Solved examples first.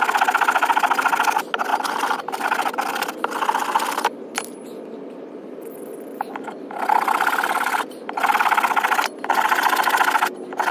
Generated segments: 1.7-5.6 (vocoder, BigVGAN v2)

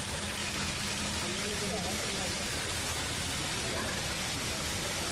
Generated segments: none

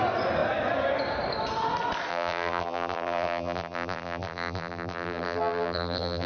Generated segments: 2.1-6.3 (vocoder, BigVGAN v2)

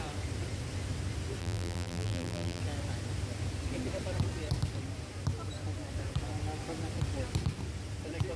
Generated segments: 1.4-2.6 (vocoder, BigVGAN v2)

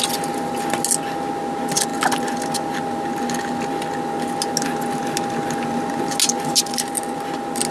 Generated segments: none